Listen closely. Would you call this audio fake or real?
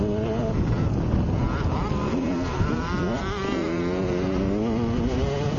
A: real